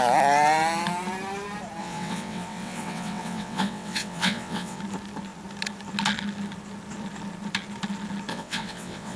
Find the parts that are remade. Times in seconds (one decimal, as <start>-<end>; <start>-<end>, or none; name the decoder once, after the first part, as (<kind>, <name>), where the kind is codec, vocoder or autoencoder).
1.8-4.8 (vocoder, WaveNeXt); 8.3-9.2

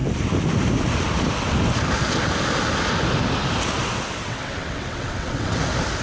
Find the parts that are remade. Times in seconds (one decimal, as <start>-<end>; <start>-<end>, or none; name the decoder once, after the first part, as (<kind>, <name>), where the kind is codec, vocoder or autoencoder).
4.2-5.6 (vocoder, WaveNeXt)

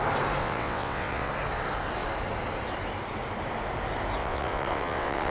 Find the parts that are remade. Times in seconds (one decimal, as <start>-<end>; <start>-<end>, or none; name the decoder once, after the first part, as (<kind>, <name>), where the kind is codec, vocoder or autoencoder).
0.4-1.3 (vocoder, WaveNeXt); 4.2-5.3

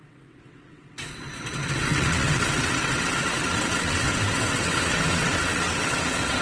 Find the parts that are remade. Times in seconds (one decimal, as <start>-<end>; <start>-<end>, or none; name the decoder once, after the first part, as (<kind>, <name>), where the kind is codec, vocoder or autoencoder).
0.0-6.4 (vocoder, WaveNeXt)

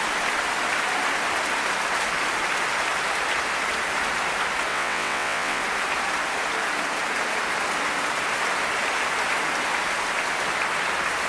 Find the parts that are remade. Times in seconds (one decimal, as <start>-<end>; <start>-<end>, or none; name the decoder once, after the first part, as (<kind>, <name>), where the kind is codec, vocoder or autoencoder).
4.7-5.6 (vocoder, WaveNeXt)

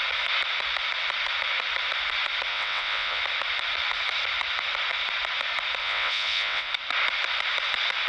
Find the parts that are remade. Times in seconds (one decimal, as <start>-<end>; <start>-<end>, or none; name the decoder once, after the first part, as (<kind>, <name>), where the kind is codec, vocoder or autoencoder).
2.5-3.2 (vocoder, WaveNeXt); 5.8-6.7